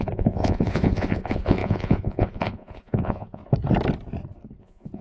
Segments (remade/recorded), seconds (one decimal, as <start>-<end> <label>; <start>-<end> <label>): 0.0-3.4 remade; 3.4-4.6 recorded; 4.6-5.0 remade